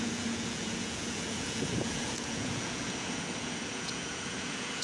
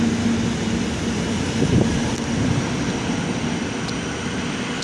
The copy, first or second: first